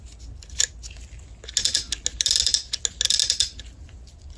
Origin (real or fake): real